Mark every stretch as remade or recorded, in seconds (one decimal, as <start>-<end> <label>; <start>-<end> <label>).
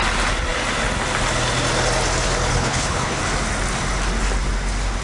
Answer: 0.0-2.5 recorded; 2.5-3.2 remade; 3.2-5.0 recorded